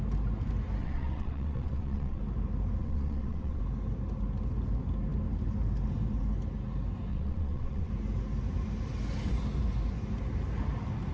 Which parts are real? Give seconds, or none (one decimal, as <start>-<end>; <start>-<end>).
0.0-0.8; 2.2-2.8; 3.6-7.1; 7.9-11.1